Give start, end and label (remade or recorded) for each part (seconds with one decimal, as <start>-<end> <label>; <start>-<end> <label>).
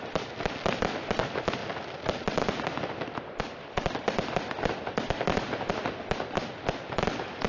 0.0-7.5 recorded